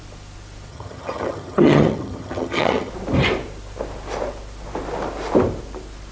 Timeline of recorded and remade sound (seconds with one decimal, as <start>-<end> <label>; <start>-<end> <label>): 0.0-0.7 recorded; 0.7-2.9 remade; 2.9-6.1 recorded